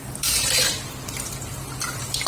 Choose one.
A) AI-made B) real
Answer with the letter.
B